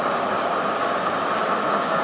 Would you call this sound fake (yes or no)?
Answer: no